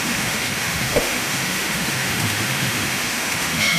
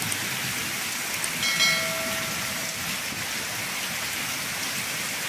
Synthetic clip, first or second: first